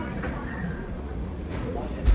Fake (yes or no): yes